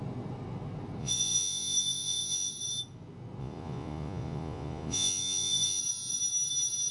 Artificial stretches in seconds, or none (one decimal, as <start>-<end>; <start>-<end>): 1.0-2.5; 3.4-5.8